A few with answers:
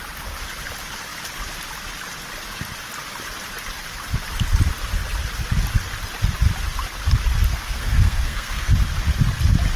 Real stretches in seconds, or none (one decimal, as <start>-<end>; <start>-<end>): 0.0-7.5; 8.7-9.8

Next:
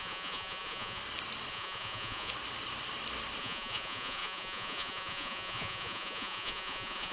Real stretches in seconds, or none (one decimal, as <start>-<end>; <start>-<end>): 1.0-1.5; 2.3-3.4

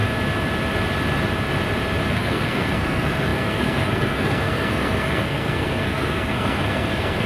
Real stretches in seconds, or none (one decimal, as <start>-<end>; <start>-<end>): 0.0-2.1

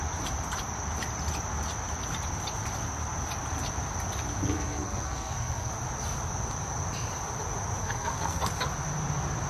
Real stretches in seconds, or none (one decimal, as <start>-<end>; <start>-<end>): 0.0-4.4; 5.7-7.8; 8.4-9.5